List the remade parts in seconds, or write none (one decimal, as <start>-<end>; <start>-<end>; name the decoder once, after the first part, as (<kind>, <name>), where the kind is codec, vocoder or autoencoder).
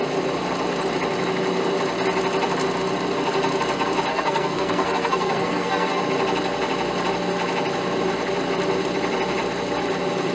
4.1-6.0 (codec, SNAC)